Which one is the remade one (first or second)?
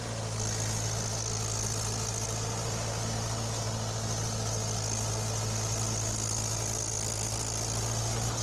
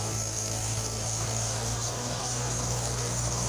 second